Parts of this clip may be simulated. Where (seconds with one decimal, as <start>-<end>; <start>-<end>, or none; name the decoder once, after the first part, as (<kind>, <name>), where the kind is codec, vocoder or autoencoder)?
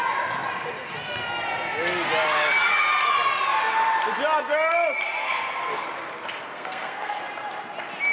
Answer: 5.2-5.8 (codec, SNAC); 6.5-7.2